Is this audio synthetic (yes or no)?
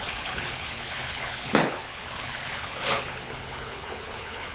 yes